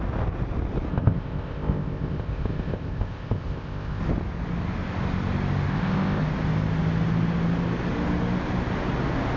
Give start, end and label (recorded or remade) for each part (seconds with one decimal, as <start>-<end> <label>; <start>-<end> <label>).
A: 0.0-0.9 recorded; 0.9-4.0 remade; 4.0-5.7 recorded; 5.7-6.2 remade; 6.2-9.4 recorded